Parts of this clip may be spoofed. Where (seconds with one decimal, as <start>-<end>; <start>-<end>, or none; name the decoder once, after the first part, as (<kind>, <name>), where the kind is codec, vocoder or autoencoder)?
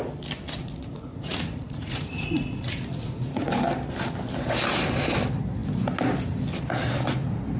0.6-3.5 (vocoder, Vocos)